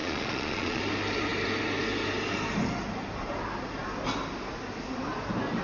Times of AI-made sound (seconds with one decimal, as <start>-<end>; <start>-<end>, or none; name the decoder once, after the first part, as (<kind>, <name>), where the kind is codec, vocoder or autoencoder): 0.0-0.8 (vocoder, Vocos)

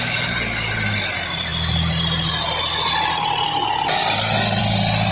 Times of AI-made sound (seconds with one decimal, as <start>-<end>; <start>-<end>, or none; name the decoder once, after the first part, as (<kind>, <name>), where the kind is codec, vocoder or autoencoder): none